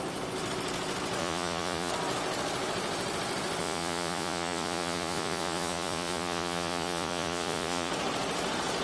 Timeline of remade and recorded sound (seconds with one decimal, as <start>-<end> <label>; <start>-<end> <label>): 0.0-1.2 recorded; 1.2-1.9 remade; 1.9-3.6 recorded; 3.6-7.9 remade; 7.9-8.8 recorded